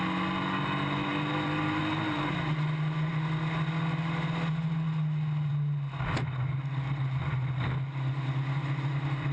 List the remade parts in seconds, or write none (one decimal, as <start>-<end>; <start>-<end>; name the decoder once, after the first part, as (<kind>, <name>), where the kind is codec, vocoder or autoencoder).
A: none